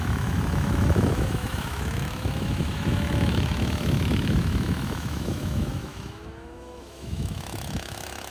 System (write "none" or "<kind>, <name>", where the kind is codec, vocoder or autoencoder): autoencoder, DAC-VAE